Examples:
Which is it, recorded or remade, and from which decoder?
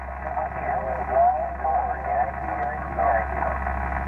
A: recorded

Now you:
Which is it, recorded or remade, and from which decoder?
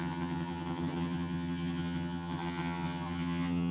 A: remade, vocoder, HiFi-GAN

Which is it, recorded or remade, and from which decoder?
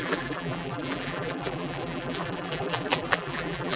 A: remade, vocoder, BigVGAN v2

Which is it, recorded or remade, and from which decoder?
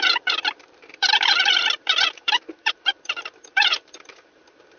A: remade, vocoder, BigVGAN v2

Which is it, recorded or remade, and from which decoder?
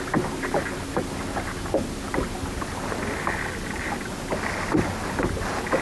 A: recorded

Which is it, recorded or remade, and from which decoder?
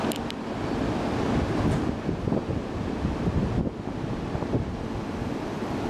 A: recorded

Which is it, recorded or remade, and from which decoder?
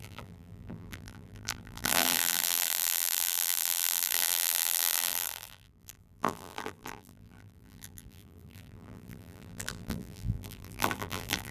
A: remade, vocoder, BigVGAN v2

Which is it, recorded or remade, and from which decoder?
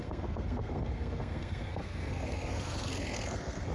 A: remade, codec, SNAC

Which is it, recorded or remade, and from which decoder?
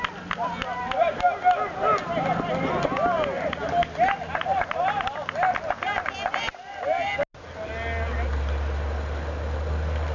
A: recorded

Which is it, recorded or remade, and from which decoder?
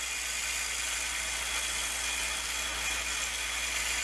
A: recorded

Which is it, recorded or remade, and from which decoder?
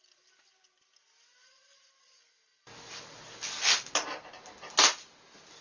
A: recorded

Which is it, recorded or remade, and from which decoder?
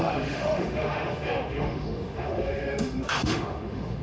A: remade, autoencoder, DAC-VAE